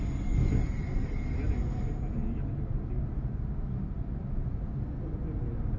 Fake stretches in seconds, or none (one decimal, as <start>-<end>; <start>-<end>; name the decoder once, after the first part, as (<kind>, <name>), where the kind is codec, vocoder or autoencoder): none